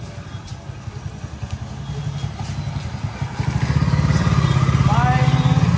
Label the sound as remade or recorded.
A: recorded